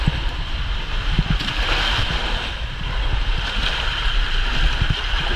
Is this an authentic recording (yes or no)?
yes